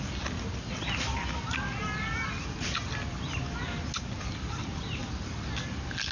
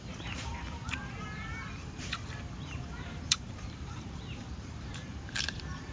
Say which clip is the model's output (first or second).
second